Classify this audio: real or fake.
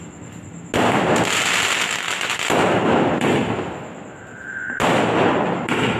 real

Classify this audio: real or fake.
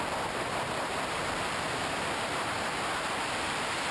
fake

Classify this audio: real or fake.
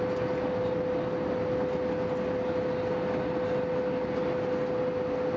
real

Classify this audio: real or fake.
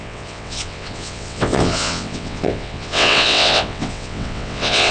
fake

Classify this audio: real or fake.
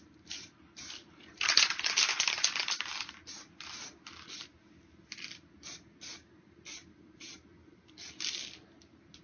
real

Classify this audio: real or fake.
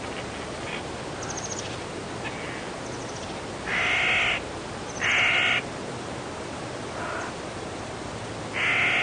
real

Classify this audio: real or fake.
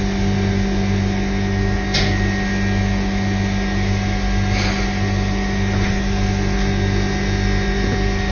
real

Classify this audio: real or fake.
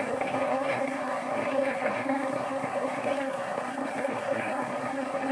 fake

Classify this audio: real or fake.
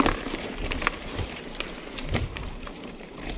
fake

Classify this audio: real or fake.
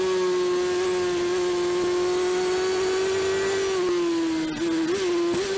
real